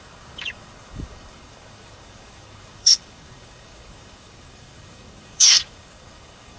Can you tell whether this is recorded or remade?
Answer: remade